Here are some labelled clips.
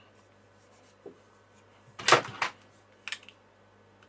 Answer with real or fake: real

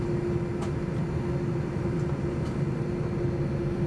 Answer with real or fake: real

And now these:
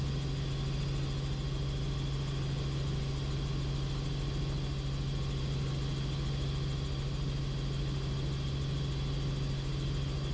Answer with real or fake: real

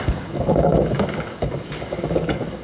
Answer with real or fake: fake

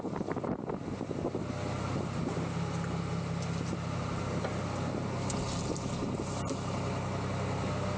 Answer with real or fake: real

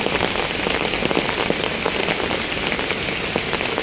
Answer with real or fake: real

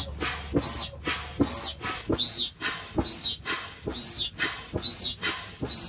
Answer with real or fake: real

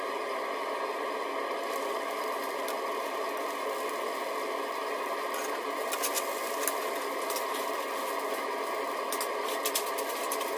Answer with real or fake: real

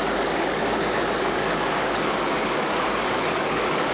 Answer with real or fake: fake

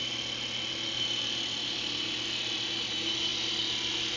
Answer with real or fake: real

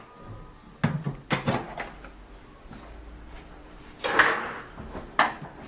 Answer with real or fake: real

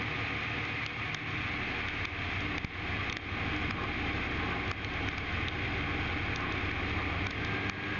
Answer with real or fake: real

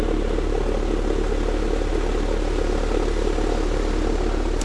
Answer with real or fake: real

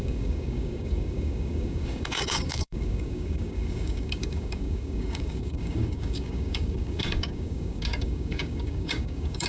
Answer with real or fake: fake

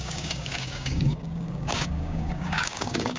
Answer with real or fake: fake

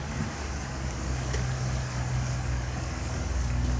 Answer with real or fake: fake